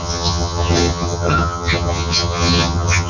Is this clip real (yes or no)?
no